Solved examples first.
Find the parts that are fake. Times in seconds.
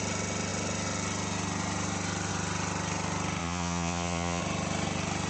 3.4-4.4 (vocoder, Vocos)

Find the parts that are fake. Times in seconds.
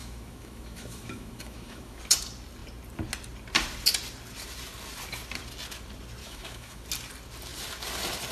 0.0-2.0 (autoencoder, DAC-VAE); 6.2-6.8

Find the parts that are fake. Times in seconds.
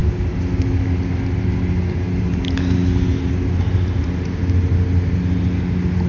none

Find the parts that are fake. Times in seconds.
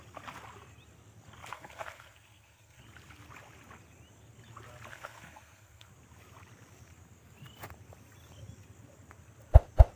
1.5-2.8 (codec, SNAC); 4.9-5.9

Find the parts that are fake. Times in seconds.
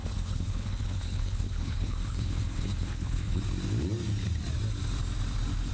0.0-3.4 (codec, HILCodec)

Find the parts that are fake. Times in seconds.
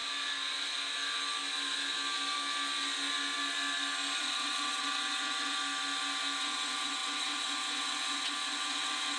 4.2-5.6 (vocoder, WaveNeXt); 6.4-9.2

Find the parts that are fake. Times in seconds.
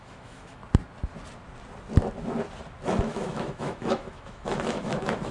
0.0-0.6 (autoencoder, DAC-VAE); 3.0-5.3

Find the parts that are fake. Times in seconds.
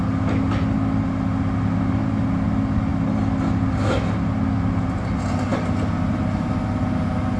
none